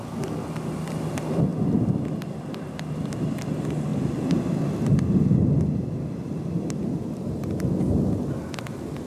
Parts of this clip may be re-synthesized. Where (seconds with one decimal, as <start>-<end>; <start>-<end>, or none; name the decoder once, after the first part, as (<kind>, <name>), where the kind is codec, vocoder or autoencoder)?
1.5-3.4 (vocoder, BigVGAN v2)